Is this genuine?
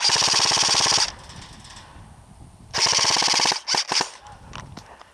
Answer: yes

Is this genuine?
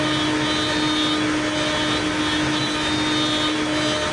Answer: yes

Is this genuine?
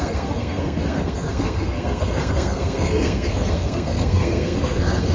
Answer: no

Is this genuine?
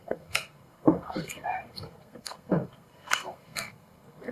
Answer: no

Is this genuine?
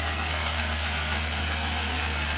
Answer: no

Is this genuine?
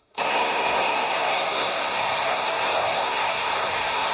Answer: no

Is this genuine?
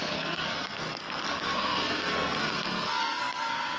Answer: no